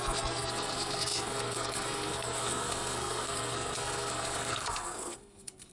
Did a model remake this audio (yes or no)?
yes